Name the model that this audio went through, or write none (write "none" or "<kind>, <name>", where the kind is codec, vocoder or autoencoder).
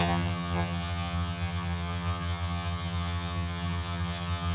vocoder, HiFi-GAN